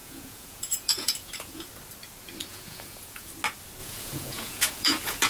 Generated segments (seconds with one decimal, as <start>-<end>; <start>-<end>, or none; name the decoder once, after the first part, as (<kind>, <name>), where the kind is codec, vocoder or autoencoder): 0.0-1.7 (vocoder, Vocos); 2.5-3.3; 3.8-5.3